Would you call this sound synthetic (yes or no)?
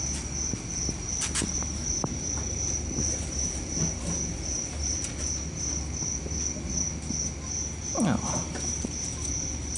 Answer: no